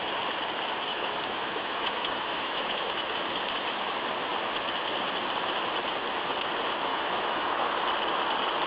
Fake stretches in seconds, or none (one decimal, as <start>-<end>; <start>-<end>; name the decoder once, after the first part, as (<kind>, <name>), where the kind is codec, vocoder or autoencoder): 0.9-3.1 (autoencoder, DAC-VAE); 6.9-7.8